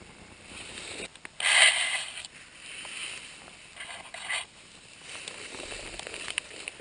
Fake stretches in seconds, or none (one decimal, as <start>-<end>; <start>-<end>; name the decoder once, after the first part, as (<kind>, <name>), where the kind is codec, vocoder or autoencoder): none